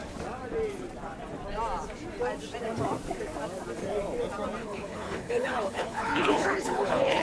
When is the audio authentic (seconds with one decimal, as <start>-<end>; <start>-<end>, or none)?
0.0-4.6